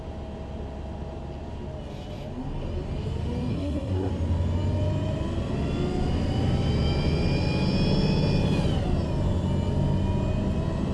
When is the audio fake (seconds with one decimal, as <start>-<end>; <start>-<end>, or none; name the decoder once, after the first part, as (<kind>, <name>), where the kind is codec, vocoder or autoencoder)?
3.5-4.1 (codec, SNAC)